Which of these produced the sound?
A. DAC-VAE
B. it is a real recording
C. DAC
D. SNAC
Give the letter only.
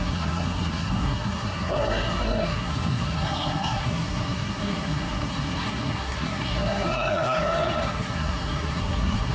D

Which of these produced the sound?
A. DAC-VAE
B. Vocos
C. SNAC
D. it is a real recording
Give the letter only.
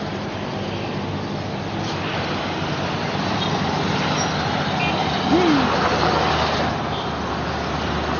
D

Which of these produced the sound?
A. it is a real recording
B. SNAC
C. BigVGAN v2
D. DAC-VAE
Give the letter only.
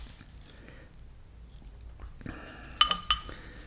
A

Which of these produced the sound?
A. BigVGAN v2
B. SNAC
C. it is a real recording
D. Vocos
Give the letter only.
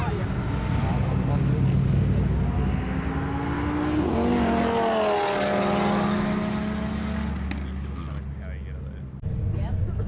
C